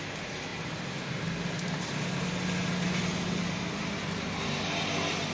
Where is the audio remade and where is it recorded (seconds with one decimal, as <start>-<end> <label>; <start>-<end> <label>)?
0.0-5.3 recorded